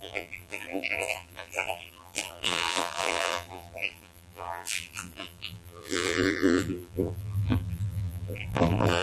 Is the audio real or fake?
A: fake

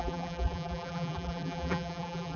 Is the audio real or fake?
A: fake